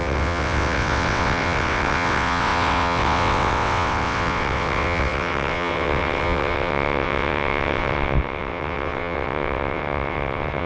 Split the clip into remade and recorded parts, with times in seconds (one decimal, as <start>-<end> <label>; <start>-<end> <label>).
0.0-10.7 remade